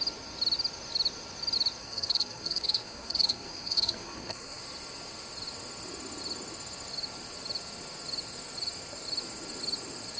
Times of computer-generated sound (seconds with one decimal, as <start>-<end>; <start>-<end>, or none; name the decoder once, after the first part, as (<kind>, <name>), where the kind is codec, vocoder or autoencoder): 1.8-4.6 (codec, SNAC)